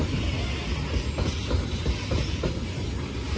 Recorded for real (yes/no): yes